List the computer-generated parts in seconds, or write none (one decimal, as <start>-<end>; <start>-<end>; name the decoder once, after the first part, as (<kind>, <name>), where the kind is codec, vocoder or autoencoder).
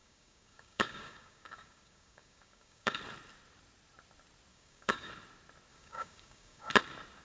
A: 0.0-3.0 (codec, DAC); 4.5-5.1; 5.7-6.7